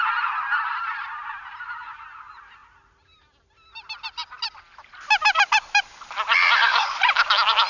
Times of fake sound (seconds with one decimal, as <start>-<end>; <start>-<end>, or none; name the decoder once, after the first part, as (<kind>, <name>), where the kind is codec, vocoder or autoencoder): none